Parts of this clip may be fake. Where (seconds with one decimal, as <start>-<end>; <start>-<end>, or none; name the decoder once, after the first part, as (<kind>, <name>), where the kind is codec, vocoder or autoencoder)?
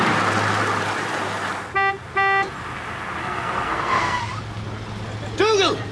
3.2-4.2 (codec, SNAC)